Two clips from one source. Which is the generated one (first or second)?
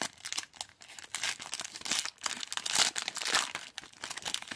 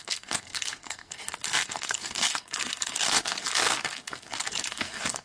second